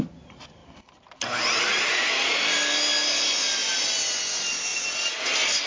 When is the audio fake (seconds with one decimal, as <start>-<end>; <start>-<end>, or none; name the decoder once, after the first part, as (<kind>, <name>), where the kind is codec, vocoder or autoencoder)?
none